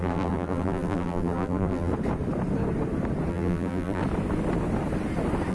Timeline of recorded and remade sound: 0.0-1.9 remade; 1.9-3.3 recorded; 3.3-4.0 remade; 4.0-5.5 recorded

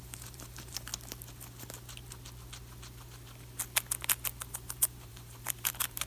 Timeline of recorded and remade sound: 0.0-0.9 remade; 0.9-4.5 recorded; 4.5-6.1 remade